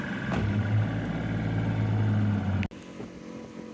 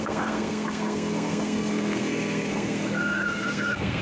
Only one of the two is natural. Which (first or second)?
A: first